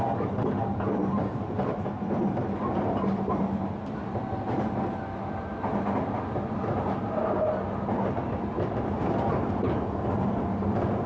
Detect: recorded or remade recorded